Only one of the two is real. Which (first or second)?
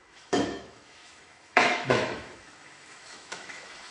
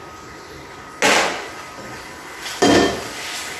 second